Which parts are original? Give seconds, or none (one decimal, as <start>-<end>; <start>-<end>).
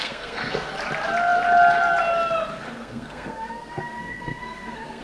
0.7-2.5